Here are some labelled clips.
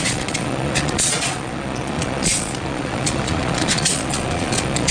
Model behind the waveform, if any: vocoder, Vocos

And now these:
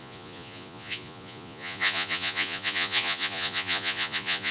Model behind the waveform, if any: vocoder, Vocos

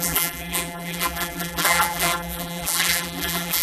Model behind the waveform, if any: vocoder, BigVGAN v2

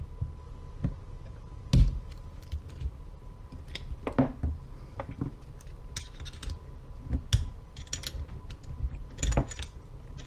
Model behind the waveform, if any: none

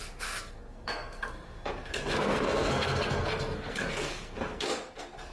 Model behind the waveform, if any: codec, SNAC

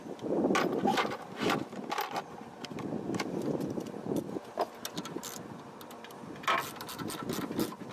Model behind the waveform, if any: none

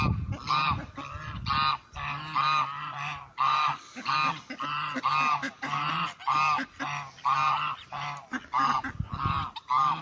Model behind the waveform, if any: none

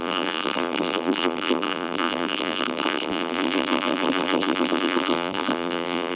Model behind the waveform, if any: vocoder, BigVGAN v2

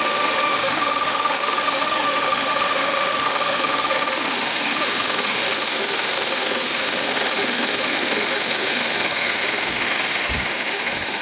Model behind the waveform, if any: autoencoder, DAC-VAE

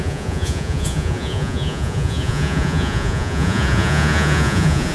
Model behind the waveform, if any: vocoder, Vocos